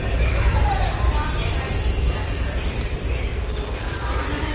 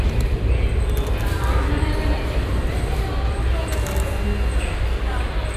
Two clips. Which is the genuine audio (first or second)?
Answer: second